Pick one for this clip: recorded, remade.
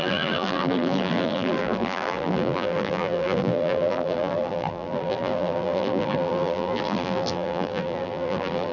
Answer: remade